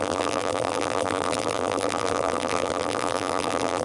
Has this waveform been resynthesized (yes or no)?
yes